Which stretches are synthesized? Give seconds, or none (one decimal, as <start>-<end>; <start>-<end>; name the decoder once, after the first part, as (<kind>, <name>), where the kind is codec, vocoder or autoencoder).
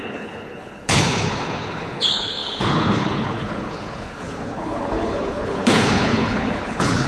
0.0-7.1 (codec, HILCodec)